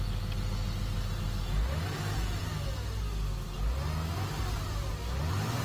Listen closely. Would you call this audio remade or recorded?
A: recorded